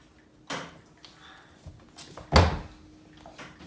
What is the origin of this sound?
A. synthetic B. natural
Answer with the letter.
B